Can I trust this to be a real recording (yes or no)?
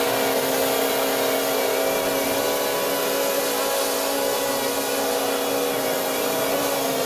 yes